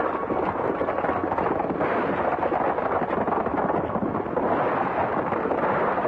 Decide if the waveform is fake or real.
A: real